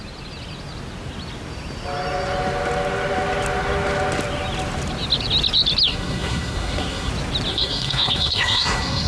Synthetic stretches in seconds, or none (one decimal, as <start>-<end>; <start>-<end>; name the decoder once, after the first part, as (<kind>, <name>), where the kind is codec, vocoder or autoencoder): 5.9-7.1 (codec, SNAC); 7.5-9.1